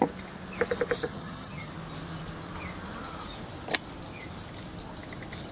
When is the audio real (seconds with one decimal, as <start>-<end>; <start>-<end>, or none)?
0.0-1.0; 1.7-5.5